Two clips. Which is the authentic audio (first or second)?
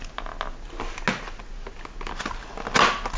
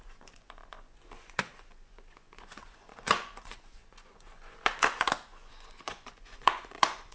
first